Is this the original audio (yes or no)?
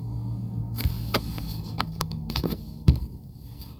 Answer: no